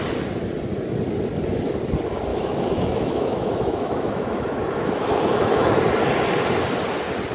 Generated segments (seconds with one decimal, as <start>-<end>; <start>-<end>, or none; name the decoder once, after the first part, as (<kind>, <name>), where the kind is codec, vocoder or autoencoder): 2.3-5.8 (autoencoder, DAC-VAE)